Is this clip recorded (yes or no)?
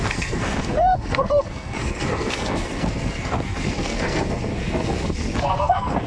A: no